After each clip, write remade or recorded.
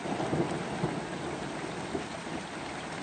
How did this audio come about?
recorded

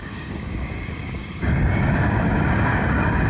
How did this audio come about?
remade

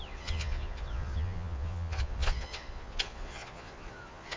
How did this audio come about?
remade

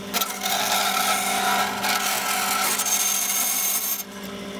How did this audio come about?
recorded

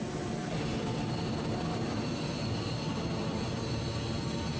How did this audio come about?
recorded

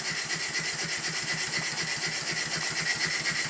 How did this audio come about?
recorded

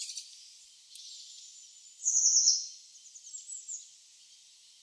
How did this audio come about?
recorded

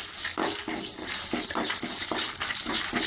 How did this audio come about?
recorded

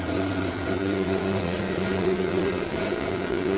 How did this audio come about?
remade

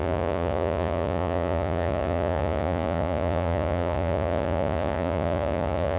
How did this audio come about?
remade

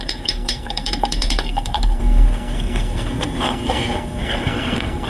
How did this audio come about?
remade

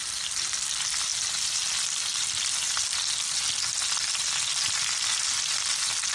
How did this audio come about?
recorded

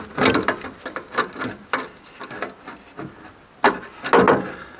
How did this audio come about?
recorded